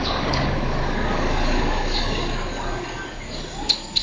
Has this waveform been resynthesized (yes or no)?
yes